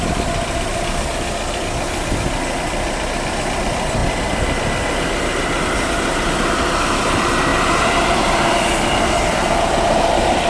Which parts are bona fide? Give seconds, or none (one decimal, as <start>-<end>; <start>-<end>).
4.0-5.6